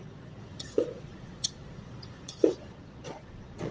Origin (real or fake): fake